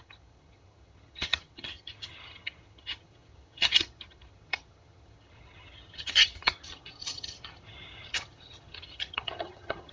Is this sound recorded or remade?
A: remade